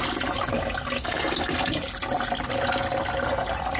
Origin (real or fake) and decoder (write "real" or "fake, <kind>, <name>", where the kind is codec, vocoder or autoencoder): real